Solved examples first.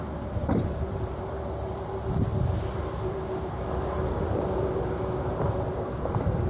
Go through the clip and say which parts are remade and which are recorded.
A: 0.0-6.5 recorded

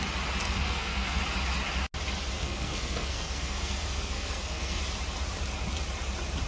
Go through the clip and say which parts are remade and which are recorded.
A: 0.0-0.4 recorded; 0.4-1.2 remade; 1.2-2.4 recorded; 2.4-4.8 remade; 4.8-6.5 recorded

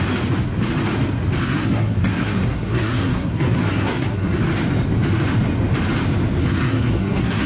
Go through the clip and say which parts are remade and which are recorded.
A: 0.0-1.4 recorded; 1.4-4.4 remade; 4.4-6.4 recorded; 6.4-7.5 remade